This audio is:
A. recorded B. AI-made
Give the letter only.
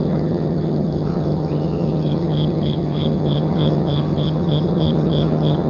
B